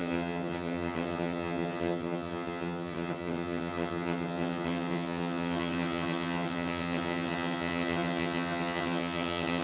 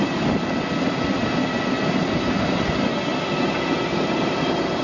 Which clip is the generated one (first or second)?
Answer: first